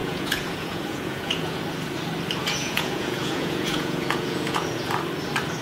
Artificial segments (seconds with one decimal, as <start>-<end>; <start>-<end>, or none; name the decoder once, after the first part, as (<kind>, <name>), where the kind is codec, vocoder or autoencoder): 0.0-1.6 (vocoder, Vocos); 2.4-4.9